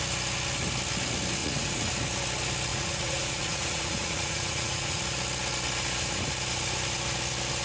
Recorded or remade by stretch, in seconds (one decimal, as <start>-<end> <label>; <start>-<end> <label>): 0.0-1.4 recorded; 1.4-1.9 remade; 1.9-2.7 recorded; 2.7-5.0 remade; 5.0-7.6 recorded